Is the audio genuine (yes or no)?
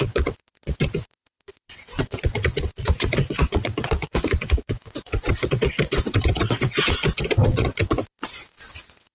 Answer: no